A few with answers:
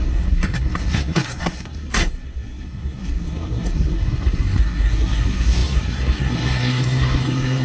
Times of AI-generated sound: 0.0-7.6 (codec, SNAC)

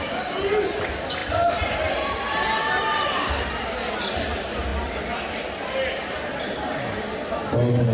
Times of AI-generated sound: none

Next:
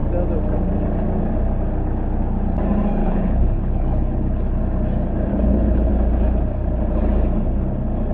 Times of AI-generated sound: 3.0-4.6 (codec, HILCodec); 5.3-5.9

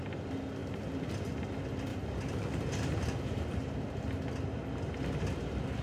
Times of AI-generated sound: 0.6-1.4 (vocoder, BigVGAN v2); 1.9-4.0